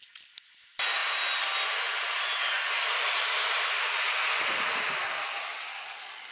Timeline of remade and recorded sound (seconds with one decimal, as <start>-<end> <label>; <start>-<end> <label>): 0.0-6.3 recorded